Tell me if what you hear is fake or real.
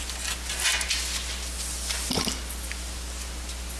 real